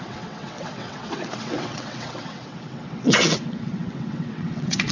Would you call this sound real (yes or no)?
no